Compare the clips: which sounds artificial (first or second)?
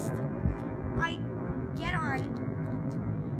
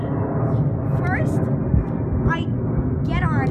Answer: first